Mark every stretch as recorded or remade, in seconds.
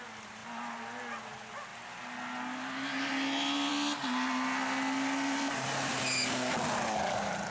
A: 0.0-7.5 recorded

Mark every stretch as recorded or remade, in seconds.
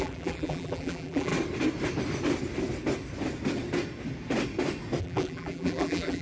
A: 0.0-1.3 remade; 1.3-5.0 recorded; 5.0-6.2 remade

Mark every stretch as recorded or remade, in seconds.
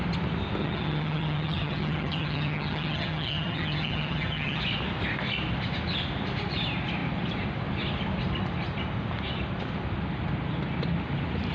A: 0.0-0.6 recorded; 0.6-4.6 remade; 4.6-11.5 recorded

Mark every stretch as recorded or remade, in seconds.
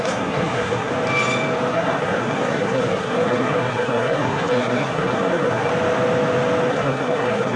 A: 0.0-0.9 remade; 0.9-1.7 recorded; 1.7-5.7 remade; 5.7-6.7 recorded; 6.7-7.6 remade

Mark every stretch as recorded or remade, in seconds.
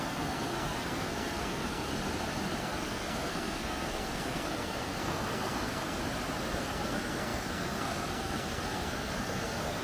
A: 0.0-1.9 remade; 1.9-2.6 recorded; 2.6-6.0 remade; 6.0-6.6 recorded; 6.6-9.8 remade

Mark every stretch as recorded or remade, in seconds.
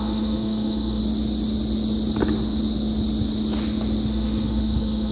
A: 0.0-1.0 remade; 1.0-4.1 recorded; 4.1-5.1 remade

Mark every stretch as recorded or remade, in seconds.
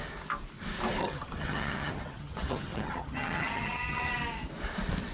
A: 0.0-1.0 recorded; 1.0-4.1 remade; 4.1-5.1 recorded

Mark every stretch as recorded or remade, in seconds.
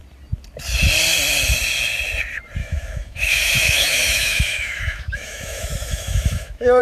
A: 0.0-2.6 recorded; 2.6-6.8 remade